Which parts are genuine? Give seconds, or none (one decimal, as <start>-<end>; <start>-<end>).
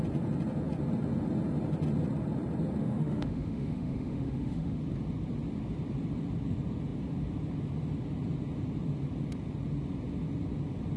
0.0-2.8; 4.8-11.0